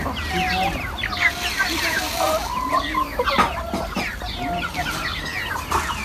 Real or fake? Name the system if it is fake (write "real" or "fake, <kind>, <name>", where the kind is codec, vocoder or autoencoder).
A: real